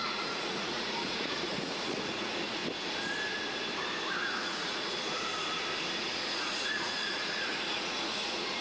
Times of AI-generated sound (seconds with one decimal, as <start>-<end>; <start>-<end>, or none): 0.0-2.6; 4.2-5.3; 6.0-8.6